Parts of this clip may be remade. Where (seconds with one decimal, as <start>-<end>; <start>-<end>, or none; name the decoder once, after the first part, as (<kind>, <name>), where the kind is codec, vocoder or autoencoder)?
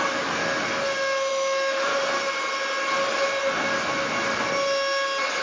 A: 0.0-0.4 (autoencoder, DAC-VAE); 1.3-1.9